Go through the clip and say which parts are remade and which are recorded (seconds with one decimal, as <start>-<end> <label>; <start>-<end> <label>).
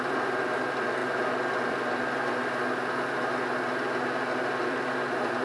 0.0-1.0 remade; 1.0-1.6 recorded; 1.6-2.4 remade; 2.4-4.4 recorded; 4.4-5.4 remade